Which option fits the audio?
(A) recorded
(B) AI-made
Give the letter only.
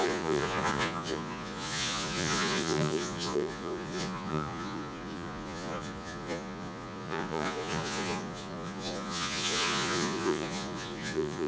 B